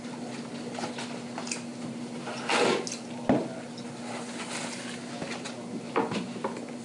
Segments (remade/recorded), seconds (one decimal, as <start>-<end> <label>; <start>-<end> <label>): 0.0-6.8 recorded